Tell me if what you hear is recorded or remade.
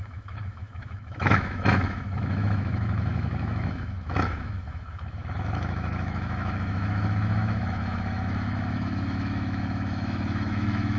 remade